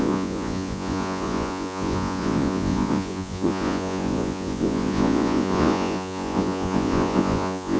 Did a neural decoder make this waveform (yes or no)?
yes